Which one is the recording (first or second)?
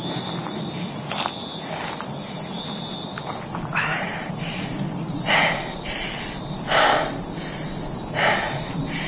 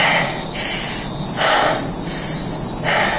second